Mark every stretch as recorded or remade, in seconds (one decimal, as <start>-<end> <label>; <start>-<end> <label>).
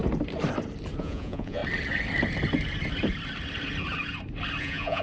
0.0-1.0 recorded; 1.0-1.6 remade; 1.6-4.6 recorded; 4.6-5.0 remade